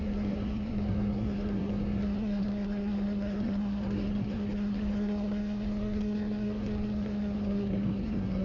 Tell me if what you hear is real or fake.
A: fake